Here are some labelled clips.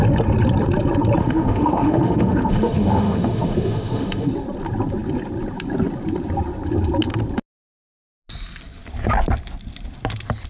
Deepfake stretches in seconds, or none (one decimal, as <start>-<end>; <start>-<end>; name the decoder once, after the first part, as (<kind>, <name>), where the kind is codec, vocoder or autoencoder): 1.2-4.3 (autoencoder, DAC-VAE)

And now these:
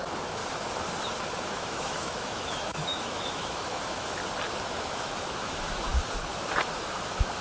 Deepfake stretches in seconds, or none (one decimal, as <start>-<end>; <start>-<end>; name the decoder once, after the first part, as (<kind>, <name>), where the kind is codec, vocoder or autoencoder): 0.0-0.4 (autoencoder, DAC-VAE); 1.3-4.2; 4.7-5.9; 6.7-7.4

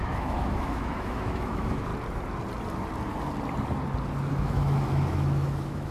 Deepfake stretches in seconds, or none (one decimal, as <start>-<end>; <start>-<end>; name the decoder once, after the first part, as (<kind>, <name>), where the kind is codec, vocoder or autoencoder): 0.0-1.9 (autoencoder, DAC-VAE); 4.3-5.9

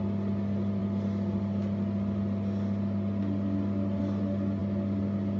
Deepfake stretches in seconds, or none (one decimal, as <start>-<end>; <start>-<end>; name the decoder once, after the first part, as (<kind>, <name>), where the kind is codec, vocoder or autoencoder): none

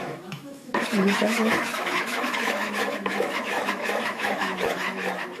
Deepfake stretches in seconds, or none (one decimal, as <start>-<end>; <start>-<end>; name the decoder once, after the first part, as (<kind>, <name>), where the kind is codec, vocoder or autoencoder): 0.0-5.4 (autoencoder, DAC-VAE)